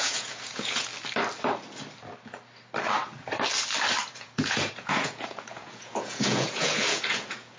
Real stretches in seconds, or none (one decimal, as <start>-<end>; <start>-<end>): 0.9-4.1